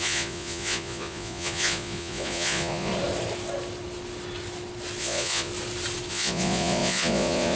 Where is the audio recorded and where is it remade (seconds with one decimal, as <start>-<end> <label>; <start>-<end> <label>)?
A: 0.0-2.9 remade; 2.9-5.0 recorded; 5.0-5.5 remade; 5.5-6.1 recorded; 6.1-7.6 remade